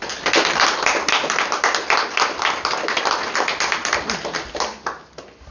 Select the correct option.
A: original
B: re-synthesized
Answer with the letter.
A